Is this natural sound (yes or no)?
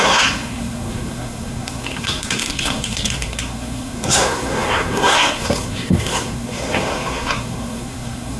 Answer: no